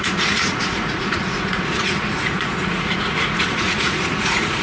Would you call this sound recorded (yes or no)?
no